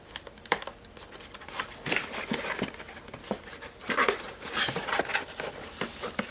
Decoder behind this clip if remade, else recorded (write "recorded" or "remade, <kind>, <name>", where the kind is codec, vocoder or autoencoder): recorded